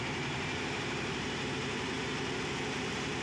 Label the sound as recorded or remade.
remade